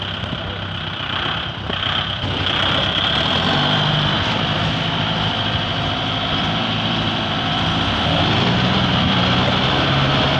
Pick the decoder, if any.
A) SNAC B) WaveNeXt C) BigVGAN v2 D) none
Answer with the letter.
C